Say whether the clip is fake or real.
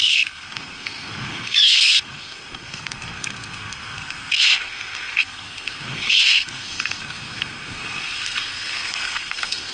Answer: fake